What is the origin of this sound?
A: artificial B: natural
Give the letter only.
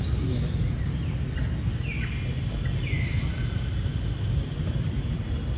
B